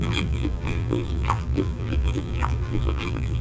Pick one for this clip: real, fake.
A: fake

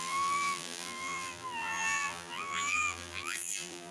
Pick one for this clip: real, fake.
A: fake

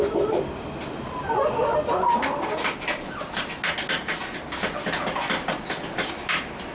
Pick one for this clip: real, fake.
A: real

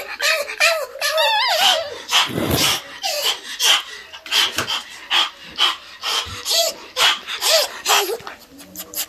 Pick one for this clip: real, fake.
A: fake